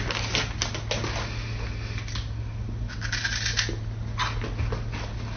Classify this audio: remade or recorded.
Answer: recorded